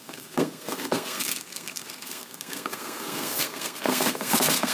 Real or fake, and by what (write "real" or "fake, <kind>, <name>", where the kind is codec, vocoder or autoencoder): fake, codec, SNAC